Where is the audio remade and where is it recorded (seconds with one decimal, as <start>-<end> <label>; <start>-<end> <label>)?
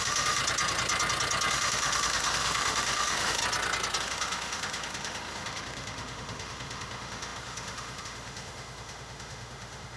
0.0-0.4 remade; 0.4-1.5 recorded; 1.5-3.4 remade; 3.4-4.0 recorded; 4.0-10.0 remade